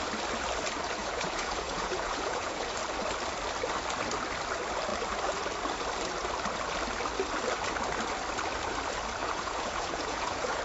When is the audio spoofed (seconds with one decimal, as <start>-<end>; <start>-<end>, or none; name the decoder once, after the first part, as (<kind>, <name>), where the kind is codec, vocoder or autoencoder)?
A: 1.0-2.7 (vocoder, Vocos); 9.2-10.6